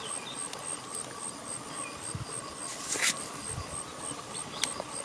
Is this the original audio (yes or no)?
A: yes